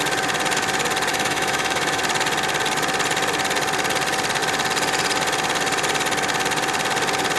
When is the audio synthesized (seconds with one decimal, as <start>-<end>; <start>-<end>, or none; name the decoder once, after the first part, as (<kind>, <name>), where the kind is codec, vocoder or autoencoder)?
1.1-2.0 (autoencoder, DAC-VAE)